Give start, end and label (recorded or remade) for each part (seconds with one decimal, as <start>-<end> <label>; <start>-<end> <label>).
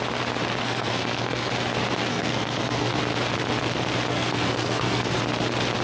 0.0-0.6 recorded; 0.6-1.5 remade; 1.5-2.1 recorded; 2.1-3.0 remade; 3.0-4.1 recorded; 4.1-5.2 remade; 5.2-5.8 recorded